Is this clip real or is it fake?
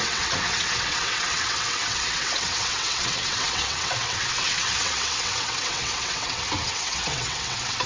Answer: fake